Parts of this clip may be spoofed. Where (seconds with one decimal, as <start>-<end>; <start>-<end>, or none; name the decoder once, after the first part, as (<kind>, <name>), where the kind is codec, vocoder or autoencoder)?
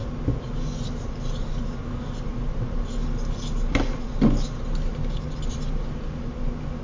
none